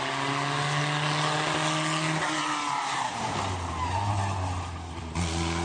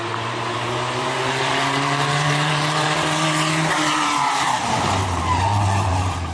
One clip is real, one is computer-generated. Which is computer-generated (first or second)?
second